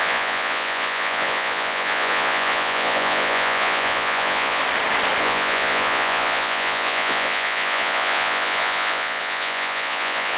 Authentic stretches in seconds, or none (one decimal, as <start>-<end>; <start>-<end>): 4.6-5.2